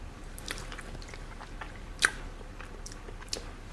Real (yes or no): yes